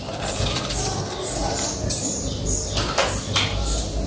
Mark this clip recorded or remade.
recorded